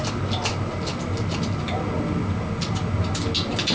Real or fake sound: real